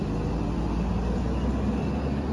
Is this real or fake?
real